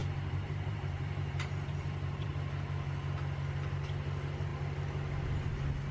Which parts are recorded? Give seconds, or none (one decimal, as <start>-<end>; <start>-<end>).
2.3-5.9

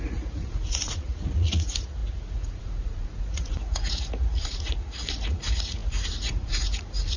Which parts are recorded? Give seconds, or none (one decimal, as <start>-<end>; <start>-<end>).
none

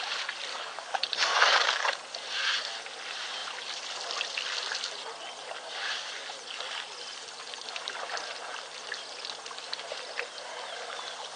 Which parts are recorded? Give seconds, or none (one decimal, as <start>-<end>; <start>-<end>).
0.0-0.5; 2.0-11.4

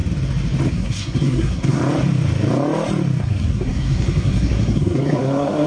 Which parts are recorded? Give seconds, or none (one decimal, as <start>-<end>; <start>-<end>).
0.0-0.7; 1.8-3.2

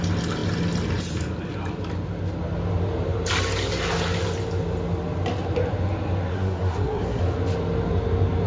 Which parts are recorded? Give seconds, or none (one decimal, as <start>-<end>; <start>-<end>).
0.0-6.3; 7.2-8.5